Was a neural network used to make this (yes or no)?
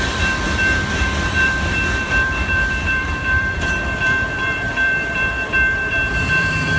yes